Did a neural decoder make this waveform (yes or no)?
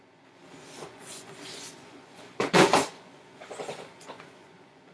yes